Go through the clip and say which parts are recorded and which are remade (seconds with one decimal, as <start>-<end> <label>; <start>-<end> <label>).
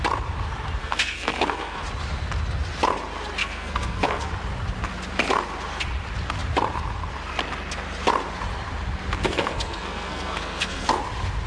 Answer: 0.0-0.8 recorded; 0.8-1.8 remade; 1.8-3.4 recorded; 3.4-4.3 remade; 4.3-9.2 recorded; 9.2-11.0 remade; 11.0-11.5 recorded